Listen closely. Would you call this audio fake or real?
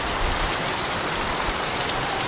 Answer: real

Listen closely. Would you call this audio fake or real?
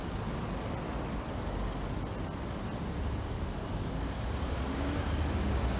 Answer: real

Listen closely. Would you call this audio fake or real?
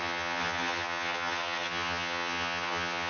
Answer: fake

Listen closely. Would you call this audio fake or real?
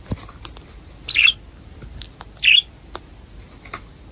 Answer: real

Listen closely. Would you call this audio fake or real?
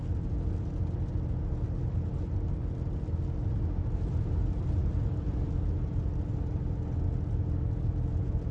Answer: real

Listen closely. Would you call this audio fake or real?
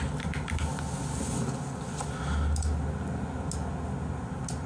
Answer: real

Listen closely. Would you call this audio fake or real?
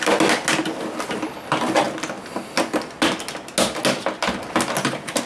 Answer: real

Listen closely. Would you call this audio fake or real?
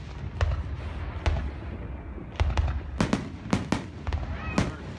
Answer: real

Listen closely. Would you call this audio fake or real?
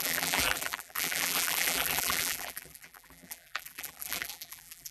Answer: fake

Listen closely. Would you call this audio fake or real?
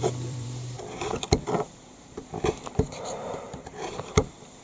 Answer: fake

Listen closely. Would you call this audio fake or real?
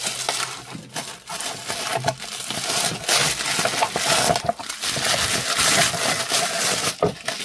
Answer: real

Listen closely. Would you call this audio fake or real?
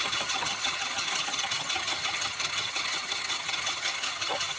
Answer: fake